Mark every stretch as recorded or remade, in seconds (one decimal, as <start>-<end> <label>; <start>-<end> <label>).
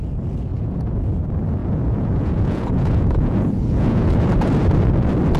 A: 0.0-0.5 recorded; 0.5-1.2 remade; 1.2-1.6 recorded; 1.6-4.1 remade; 4.1-5.4 recorded